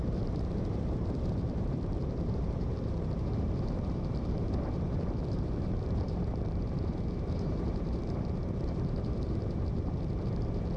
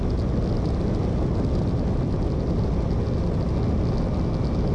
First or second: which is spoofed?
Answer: first